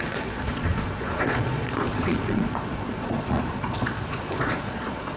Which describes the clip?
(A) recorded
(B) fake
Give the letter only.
B